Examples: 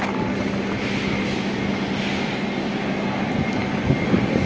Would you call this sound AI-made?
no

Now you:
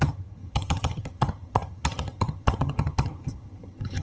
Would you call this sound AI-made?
yes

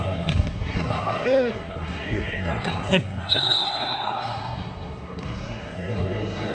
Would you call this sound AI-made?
yes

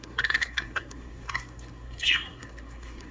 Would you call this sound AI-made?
yes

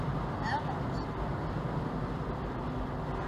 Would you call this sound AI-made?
no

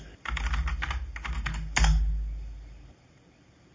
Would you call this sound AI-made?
no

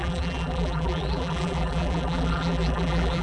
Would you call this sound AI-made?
yes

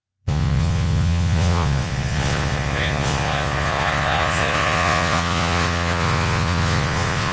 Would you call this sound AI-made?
yes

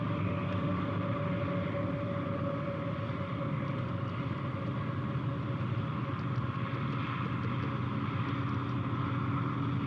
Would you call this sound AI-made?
no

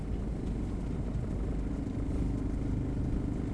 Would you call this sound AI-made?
no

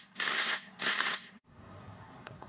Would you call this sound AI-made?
yes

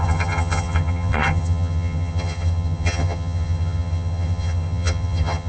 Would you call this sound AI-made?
yes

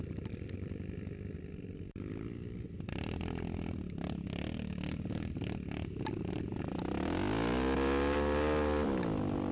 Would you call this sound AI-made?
no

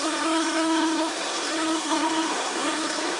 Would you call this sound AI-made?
yes